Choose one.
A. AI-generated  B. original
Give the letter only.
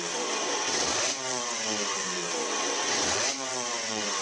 A